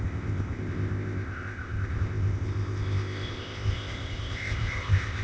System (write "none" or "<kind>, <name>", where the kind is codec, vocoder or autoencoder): codec, ZipCodec